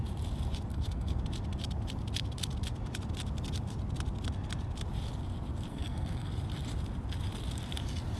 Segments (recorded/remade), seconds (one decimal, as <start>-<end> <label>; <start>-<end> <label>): 0.0-0.7 recorded; 0.7-1.2 remade; 1.2-5.7 recorded; 5.7-6.3 remade; 6.3-8.2 recorded